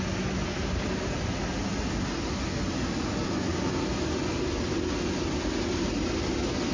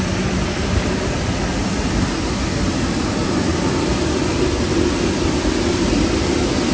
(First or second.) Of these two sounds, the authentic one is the first